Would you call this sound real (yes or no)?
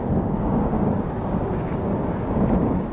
no